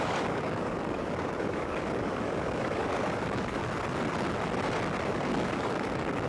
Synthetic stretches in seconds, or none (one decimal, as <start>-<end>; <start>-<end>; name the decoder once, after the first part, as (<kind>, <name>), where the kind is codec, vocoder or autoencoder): 0.0-3.6 (codec, DAC); 5.1-6.3